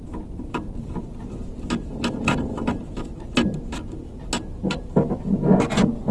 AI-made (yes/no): no